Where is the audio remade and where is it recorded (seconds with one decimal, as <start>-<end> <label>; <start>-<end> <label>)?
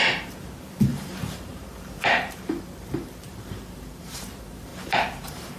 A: 0.0-0.9 recorded; 0.9-4.3 remade; 4.3-4.7 recorded; 4.7-5.6 remade